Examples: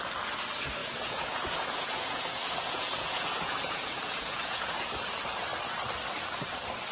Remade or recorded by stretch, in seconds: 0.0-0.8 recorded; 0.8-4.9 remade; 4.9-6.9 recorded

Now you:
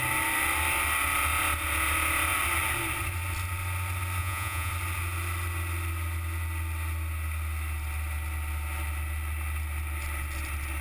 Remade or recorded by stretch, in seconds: 0.0-4.2 recorded; 4.2-4.7 remade; 4.7-10.8 recorded

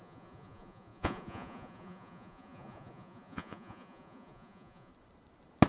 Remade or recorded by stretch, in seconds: 0.0-4.9 remade; 4.9-5.7 recorded

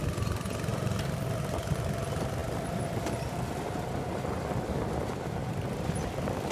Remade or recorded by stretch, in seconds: 0.0-6.5 recorded

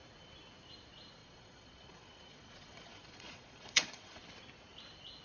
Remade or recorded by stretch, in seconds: 0.0-1.2 recorded; 1.2-4.2 remade; 4.2-5.2 recorded

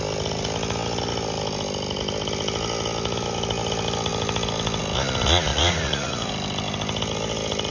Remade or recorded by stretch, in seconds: 0.0-5.5 recorded; 5.5-6.3 remade; 6.3-7.7 recorded